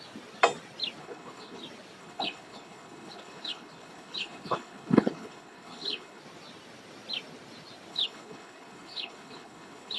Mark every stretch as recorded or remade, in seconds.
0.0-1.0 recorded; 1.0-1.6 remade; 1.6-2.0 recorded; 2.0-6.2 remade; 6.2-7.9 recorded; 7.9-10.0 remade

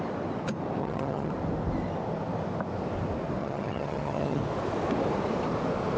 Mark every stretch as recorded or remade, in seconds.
0.0-0.8 recorded; 0.8-1.3 remade; 1.3-3.4 recorded; 3.4-4.4 remade; 4.4-6.0 recorded

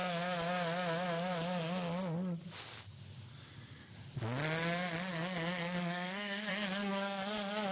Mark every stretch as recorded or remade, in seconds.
0.0-5.8 recorded; 5.8-6.5 remade; 6.5-7.7 recorded